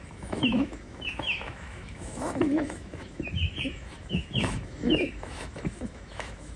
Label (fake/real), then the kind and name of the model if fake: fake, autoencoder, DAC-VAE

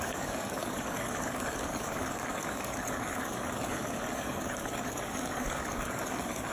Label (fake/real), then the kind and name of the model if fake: fake, codec, DAC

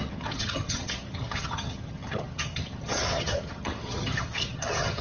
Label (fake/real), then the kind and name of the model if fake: fake, vocoder, HiFi-GAN